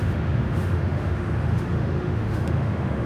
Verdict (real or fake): fake